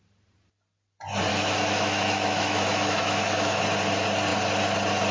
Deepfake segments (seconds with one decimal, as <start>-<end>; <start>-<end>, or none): 1.3-3.6